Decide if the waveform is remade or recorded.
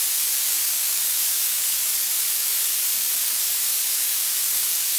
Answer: remade